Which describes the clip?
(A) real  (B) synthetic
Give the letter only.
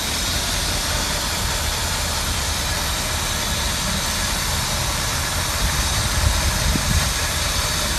B